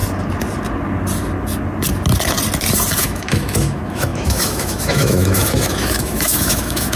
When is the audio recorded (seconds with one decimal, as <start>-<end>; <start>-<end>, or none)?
0.0-3.0